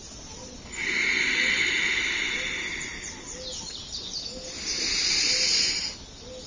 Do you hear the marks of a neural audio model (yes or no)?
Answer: no